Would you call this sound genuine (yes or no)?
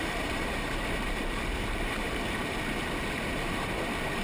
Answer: no